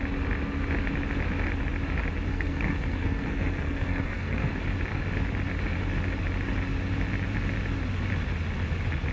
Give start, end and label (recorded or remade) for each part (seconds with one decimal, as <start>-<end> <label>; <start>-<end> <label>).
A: 0.0-2.3 recorded; 2.3-4.5 remade; 4.5-9.1 recorded

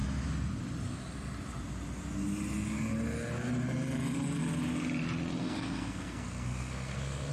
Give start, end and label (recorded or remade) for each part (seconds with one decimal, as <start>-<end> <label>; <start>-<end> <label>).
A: 0.0-5.4 recorded; 5.4-7.3 remade